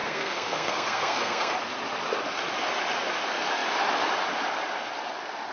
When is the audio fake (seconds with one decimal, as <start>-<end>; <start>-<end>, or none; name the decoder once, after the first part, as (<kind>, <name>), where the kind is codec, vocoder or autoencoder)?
0.0-1.5 (codec, SNAC)